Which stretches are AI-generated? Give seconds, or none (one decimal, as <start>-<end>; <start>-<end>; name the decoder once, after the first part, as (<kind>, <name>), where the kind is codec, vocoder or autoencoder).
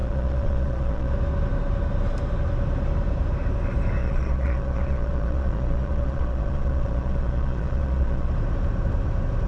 0.0-1.1 (vocoder, Vocos); 4.0-8.3